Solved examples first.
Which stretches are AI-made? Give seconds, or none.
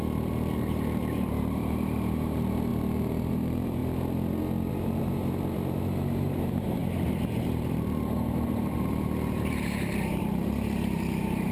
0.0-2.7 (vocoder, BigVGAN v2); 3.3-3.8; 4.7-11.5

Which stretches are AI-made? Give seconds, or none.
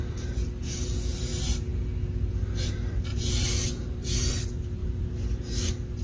3.1-4.3 (vocoder, BigVGAN v2); 4.8-5.4